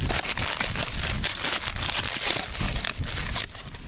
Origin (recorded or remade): recorded